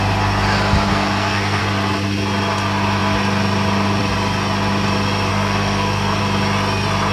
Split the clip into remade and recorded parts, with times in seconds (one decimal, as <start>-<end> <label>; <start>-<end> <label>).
0.0-0.9 recorded; 0.9-1.6 remade; 1.6-5.3 recorded; 5.3-6.2 remade; 6.2-7.1 recorded